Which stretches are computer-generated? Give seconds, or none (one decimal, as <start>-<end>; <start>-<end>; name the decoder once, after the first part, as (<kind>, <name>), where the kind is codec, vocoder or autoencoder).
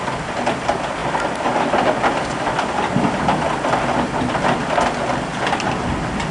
5.3-5.8 (vocoder, BigVGAN v2)